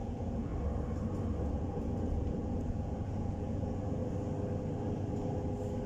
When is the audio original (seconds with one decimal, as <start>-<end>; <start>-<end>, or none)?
0.5-1.5; 4.0-5.9